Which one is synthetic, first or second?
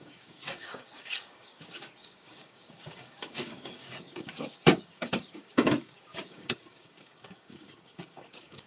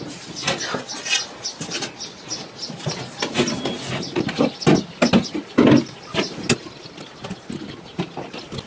first